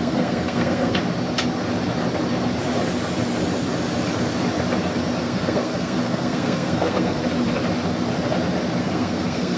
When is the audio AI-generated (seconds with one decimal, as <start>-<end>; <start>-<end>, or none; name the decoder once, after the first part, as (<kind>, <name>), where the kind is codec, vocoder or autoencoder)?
0.0-1.0 (codec, SNAC); 5.2-7.2; 8.8-9.6

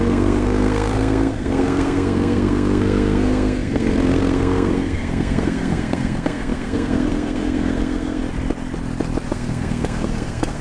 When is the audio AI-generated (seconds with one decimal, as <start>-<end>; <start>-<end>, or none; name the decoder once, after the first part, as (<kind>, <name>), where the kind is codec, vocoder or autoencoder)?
0.0-8.2 (codec, SNAC); 9.3-10.6

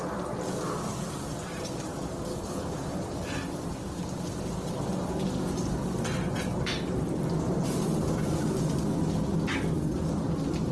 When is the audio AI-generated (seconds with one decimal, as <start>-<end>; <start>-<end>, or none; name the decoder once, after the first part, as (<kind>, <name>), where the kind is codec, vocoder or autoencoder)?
2.3-2.9 (codec, HILCodec)

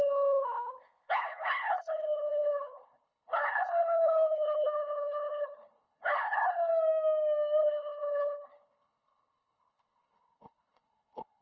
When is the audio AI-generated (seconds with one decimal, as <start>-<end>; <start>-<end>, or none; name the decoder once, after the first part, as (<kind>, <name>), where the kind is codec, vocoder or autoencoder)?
0.0-6.7 (codec, HILCodec); 7.6-11.4

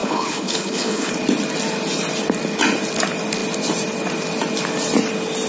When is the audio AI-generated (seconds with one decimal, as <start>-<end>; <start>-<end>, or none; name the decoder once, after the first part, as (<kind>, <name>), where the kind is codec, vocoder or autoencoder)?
0.0-1.1 (codec, HILCodec)

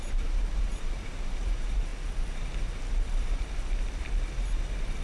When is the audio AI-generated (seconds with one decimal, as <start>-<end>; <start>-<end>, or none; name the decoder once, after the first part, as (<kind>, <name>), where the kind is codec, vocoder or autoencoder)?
0.0-1.9 (vocoder, BigVGAN v2)